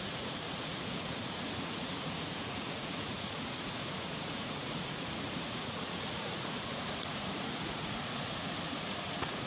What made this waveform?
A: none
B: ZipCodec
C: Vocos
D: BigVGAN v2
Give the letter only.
C